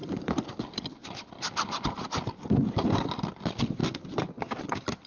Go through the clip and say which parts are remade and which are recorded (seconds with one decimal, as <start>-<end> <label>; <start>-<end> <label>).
0.0-3.8 remade; 3.8-4.6 recorded; 4.6-5.1 remade